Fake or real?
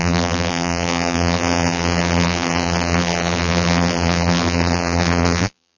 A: fake